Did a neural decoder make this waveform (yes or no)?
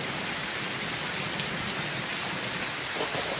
no